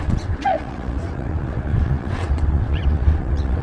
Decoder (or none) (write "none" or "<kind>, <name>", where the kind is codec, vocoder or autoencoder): vocoder, WaveNeXt